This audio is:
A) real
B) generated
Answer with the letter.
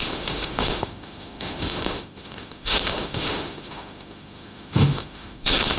B